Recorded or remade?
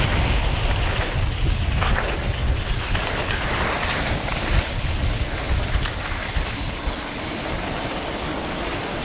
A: recorded